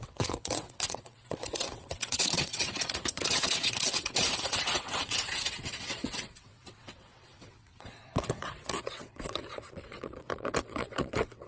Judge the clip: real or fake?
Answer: fake